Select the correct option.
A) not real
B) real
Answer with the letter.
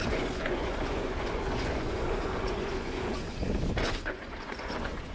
A